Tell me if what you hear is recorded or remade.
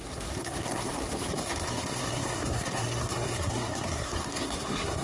remade